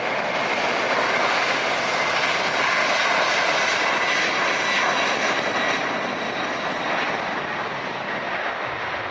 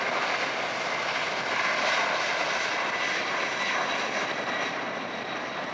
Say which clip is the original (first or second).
first